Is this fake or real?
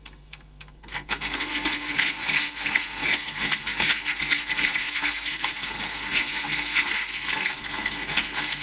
fake